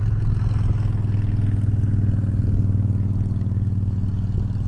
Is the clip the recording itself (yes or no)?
yes